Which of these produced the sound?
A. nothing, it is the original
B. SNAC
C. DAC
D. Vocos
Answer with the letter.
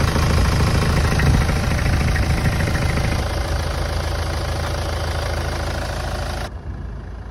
A